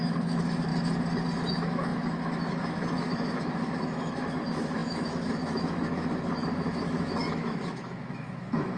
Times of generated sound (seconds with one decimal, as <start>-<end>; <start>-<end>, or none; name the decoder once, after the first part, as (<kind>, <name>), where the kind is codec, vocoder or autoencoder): 0.0-0.7 (autoencoder, DAC-VAE); 1.5-8.8